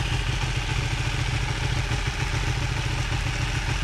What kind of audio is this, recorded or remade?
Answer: recorded